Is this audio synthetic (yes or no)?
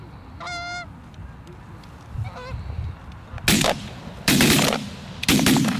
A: no